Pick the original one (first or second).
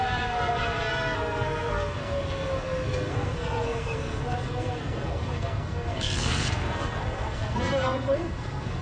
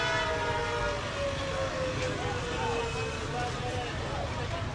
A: second